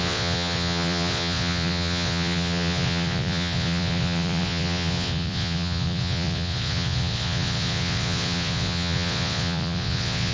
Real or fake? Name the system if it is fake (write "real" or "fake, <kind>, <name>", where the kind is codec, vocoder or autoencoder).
fake, vocoder, Vocos